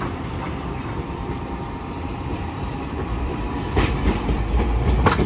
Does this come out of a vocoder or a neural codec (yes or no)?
yes